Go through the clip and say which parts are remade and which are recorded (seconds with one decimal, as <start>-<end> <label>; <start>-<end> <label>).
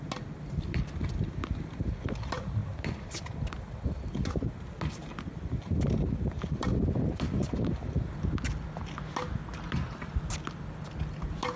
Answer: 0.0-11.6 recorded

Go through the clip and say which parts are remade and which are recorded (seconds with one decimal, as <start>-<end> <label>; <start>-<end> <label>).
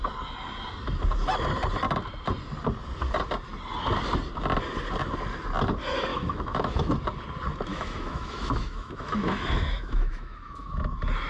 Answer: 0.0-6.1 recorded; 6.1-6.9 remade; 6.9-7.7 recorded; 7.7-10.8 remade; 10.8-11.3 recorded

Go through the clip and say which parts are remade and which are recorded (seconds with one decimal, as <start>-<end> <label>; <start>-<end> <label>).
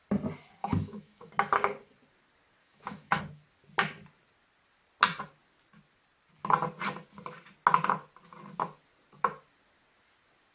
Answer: 0.0-0.6 recorded; 0.6-1.3 remade; 1.3-2.6 recorded; 2.6-3.2 remade; 3.2-10.5 recorded